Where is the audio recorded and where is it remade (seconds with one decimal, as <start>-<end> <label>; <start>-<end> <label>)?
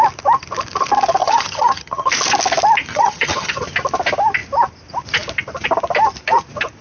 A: 0.0-1.2 recorded; 1.2-2.1 remade; 2.1-2.9 recorded; 2.9-3.6 remade; 3.6-6.8 recorded